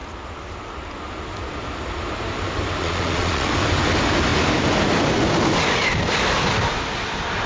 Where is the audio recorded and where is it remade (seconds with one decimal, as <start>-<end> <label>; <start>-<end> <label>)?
0.0-2.8 recorded; 2.8-3.5 remade; 3.5-7.5 recorded